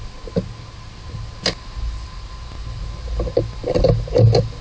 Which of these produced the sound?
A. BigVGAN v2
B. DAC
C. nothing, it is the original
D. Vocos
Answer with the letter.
C